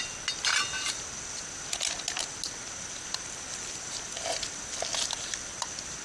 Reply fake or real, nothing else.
real